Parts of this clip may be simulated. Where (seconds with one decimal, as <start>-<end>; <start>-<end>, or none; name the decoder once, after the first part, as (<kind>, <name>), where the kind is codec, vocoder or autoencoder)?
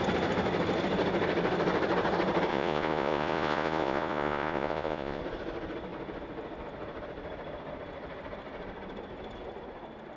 2.5-5.2 (vocoder, Vocos)